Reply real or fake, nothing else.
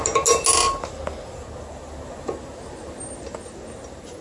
real